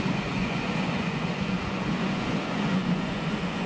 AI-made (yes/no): yes